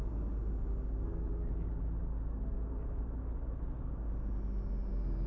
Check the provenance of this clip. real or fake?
real